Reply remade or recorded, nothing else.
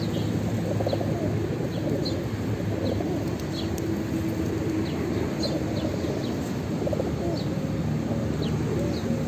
recorded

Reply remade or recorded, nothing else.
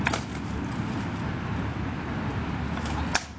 recorded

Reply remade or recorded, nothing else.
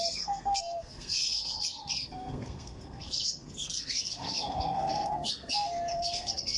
remade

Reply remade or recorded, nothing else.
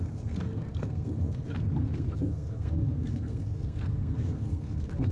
remade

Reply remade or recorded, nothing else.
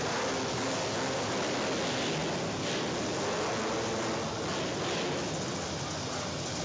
recorded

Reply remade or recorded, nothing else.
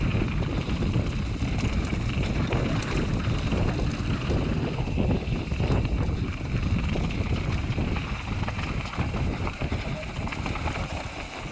recorded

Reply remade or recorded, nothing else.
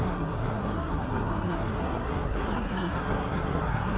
remade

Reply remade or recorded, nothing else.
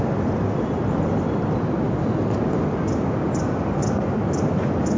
recorded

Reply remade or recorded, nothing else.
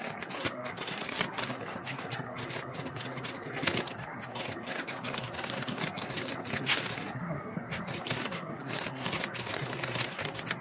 remade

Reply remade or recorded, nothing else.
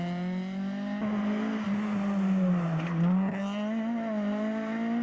recorded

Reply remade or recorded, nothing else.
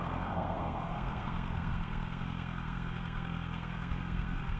remade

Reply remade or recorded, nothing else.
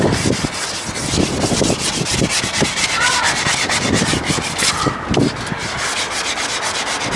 recorded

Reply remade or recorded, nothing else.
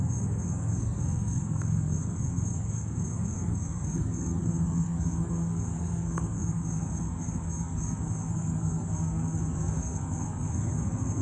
remade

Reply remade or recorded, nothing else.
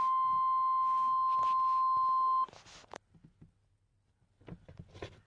recorded